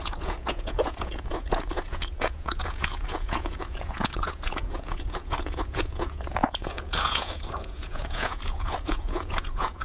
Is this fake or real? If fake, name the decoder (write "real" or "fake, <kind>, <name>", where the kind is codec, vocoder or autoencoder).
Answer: fake, vocoder, Vocos